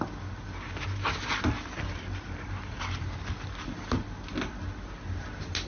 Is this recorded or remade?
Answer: recorded